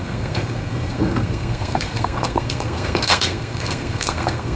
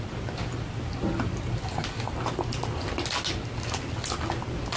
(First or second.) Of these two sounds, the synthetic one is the first